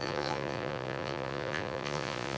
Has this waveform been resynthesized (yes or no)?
yes